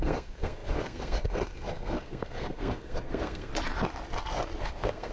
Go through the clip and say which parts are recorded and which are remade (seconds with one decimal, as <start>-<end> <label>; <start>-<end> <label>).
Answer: 0.0-3.5 remade; 3.5-4.6 recorded; 4.6-5.1 remade